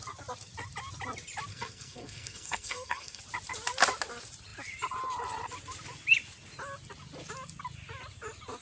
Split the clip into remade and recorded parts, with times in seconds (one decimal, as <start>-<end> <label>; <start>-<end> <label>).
0.0-1.5 recorded; 1.5-3.2 remade; 3.2-8.6 recorded